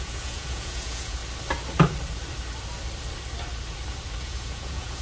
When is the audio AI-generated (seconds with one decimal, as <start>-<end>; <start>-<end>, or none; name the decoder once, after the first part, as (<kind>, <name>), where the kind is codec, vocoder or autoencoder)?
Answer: 0.0-1.2 (vocoder, Vocos); 4.2-5.0